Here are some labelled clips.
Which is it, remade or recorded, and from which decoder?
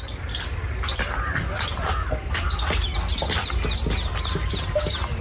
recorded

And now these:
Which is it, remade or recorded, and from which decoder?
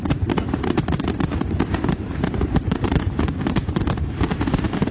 remade, vocoder, BigVGAN v2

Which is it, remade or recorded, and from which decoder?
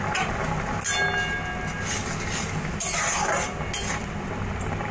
recorded